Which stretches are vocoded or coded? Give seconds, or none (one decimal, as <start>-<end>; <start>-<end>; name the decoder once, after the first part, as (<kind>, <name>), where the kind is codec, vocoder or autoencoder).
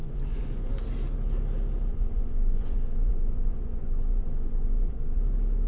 0.0-0.7 (vocoder, Vocos); 1.9-5.2